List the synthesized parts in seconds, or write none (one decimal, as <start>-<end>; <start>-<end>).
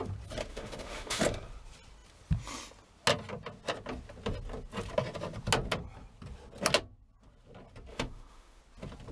0.5-1.2; 7.9-8.6